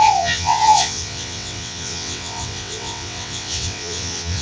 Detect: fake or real fake